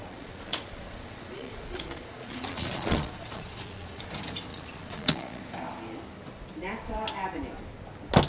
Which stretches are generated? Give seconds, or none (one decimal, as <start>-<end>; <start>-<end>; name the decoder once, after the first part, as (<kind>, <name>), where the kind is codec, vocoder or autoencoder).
0.0-4.1 (vocoder, Vocos); 4.5-5.4